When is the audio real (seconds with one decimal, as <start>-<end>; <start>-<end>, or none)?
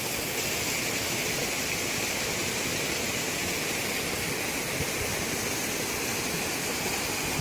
0.0-7.4